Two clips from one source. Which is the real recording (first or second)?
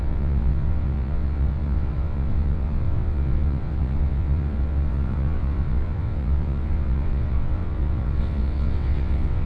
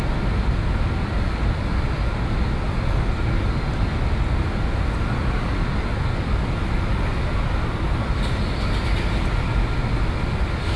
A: second